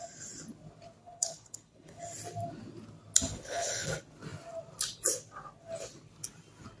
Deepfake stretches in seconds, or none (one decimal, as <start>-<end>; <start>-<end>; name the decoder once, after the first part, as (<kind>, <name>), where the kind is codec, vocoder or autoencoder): 1.0-2.0 (codec, HILCodec); 3.3-3.9